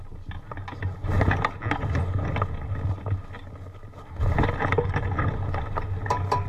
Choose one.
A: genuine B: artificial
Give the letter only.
A